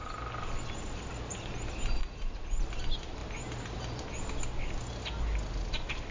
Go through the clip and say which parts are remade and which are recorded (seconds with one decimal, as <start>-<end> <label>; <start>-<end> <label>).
0.0-2.0 recorded; 2.0-2.6 remade; 2.6-6.1 recorded